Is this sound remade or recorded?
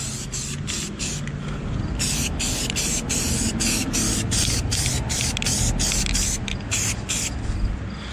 recorded